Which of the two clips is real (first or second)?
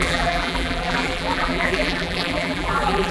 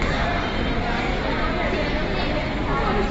second